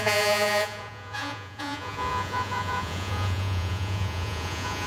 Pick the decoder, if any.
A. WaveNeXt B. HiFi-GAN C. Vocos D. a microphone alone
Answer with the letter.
C